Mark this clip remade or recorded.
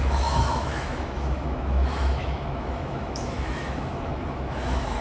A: remade